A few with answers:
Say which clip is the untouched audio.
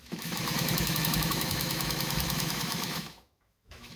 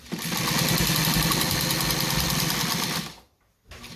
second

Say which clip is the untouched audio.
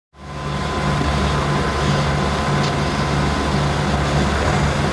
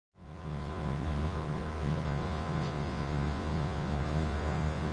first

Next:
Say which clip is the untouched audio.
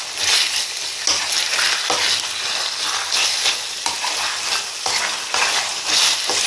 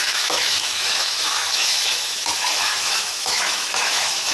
first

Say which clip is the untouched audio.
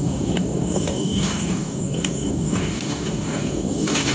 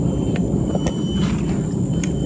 second